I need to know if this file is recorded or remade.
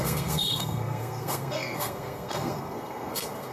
remade